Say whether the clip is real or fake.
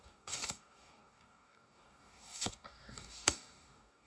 fake